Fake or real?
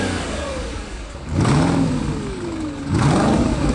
fake